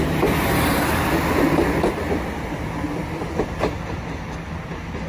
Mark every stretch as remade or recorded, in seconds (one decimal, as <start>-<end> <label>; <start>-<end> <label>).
0.0-5.1 recorded